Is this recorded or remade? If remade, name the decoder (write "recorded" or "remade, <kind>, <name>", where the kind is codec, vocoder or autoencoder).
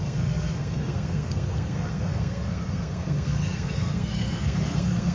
remade, codec, SNAC